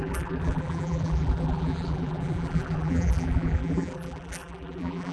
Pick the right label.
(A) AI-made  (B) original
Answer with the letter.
A